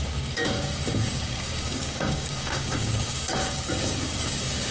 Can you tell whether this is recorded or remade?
remade